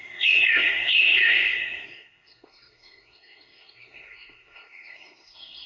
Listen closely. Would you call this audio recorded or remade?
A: remade